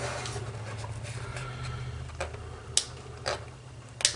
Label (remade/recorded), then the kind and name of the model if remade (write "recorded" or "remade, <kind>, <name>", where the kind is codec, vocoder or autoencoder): recorded